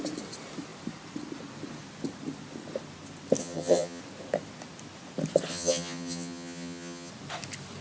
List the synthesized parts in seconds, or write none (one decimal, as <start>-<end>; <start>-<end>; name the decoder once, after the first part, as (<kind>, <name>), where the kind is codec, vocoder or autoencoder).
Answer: 3.4-4.0 (vocoder, HiFi-GAN); 5.5-7.1